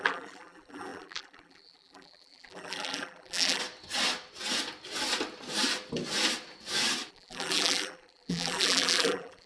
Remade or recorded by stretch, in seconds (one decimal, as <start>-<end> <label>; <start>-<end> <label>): 0.0-3.6 remade; 3.6-7.1 recorded; 7.1-9.5 remade